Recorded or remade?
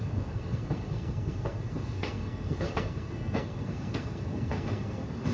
remade